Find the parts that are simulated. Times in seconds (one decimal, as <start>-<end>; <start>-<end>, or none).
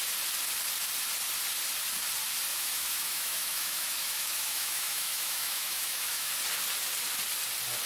2.5-6.3